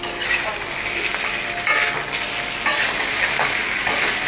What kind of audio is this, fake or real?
real